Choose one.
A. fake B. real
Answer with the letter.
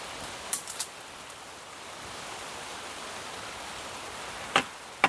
B